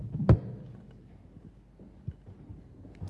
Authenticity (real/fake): real